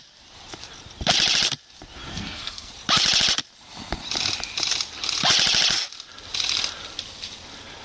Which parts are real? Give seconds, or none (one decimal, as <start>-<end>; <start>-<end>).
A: 0.0-2.1; 2.7-7.8

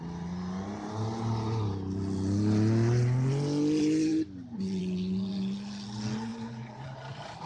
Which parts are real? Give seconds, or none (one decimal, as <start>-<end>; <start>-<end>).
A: 0.0-6.3

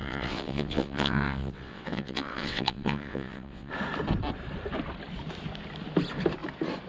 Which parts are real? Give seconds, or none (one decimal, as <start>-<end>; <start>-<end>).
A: 3.7-6.9

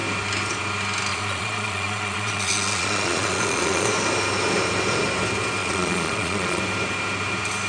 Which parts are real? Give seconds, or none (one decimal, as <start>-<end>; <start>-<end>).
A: 0.0-1.1; 3.9-5.6; 6.6-7.7

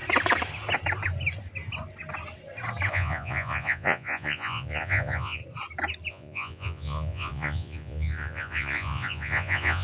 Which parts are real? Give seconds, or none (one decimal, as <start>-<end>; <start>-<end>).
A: 0.0-2.9; 5.4-6.1